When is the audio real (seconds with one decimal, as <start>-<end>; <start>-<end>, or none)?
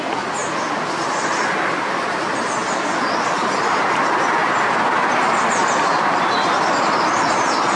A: 0.0-7.8